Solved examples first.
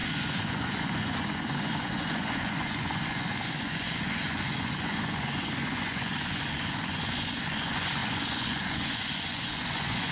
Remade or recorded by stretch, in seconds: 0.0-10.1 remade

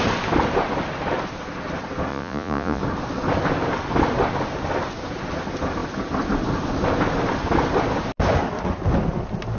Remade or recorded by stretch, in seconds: 0.0-2.1 recorded; 2.1-2.8 remade; 2.8-9.6 recorded

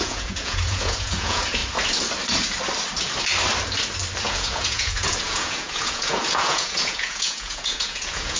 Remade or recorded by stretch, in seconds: 0.0-1.6 remade; 1.6-4.2 recorded; 4.2-8.4 remade

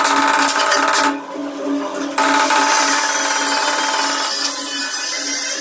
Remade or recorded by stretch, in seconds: 0.0-5.6 recorded

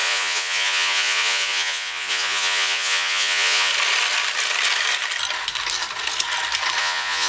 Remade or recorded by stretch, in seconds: 0.0-3.7 remade; 3.7-6.8 recorded; 6.8-7.3 remade

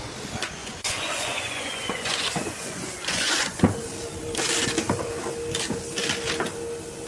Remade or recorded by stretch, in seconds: 0.0-0.6 recorded; 0.6-3.6 remade; 3.6-7.1 recorded

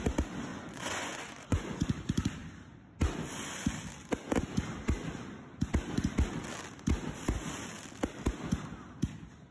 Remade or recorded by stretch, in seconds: 0.0-0.5 recorded; 0.5-1.9 remade; 1.9-9.5 recorded